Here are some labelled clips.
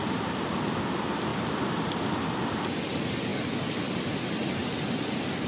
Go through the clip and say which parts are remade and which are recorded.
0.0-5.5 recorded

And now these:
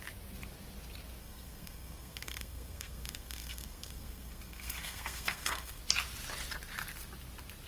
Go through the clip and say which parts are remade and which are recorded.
0.0-1.2 recorded; 1.2-5.8 remade; 5.8-7.7 recorded

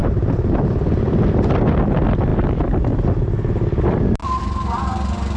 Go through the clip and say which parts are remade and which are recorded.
0.0-0.6 remade; 0.6-5.4 recorded

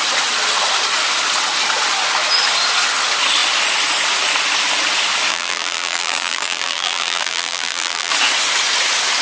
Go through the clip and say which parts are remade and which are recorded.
0.0-5.3 recorded; 5.3-8.1 remade; 8.1-9.2 recorded

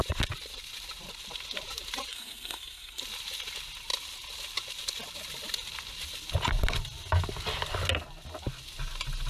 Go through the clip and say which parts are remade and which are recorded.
0.0-2.1 recorded; 2.1-3.0 remade; 3.0-9.3 recorded

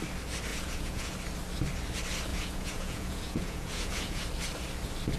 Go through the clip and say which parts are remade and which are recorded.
0.0-0.5 recorded; 0.5-1.1 remade; 1.1-2.3 recorded; 2.3-4.2 remade; 4.2-5.2 recorded

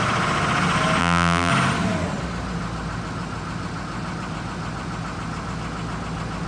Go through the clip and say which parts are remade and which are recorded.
0.0-1.0 recorded; 1.0-1.5 remade; 1.5-6.5 recorded